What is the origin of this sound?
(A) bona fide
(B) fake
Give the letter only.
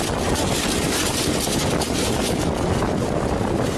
A